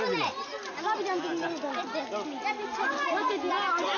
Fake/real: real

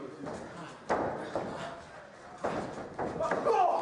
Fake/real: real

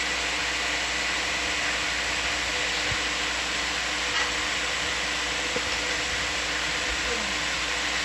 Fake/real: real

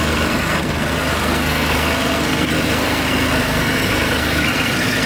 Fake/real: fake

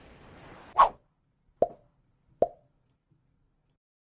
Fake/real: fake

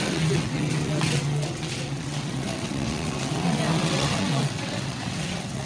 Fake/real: fake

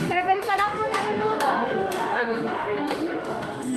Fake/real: fake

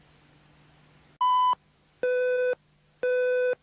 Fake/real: real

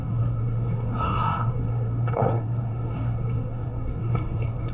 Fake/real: fake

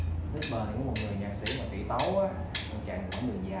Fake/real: real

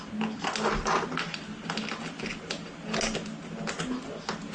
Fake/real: real